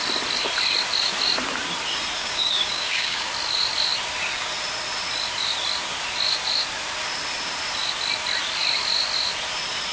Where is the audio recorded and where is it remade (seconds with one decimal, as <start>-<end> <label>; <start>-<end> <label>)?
0.0-2.2 recorded; 2.2-3.3 remade; 3.3-9.9 recorded